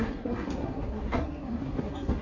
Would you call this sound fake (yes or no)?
yes